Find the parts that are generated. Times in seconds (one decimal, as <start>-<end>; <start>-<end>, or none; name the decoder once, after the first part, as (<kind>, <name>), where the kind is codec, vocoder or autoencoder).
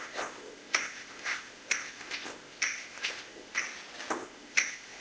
0.0-3.6 (codec, ZipCodec); 4.1-5.0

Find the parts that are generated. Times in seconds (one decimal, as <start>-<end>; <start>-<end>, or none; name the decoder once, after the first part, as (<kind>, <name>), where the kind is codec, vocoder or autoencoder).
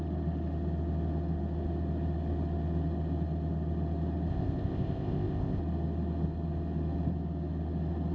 4.3-5.6 (codec, ZipCodec)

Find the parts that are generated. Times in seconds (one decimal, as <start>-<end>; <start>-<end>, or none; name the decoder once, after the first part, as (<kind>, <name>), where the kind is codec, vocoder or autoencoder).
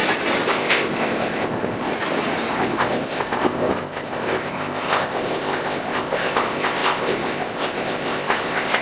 0.5-1.9 (codec, ZipCodec); 2.5-8.8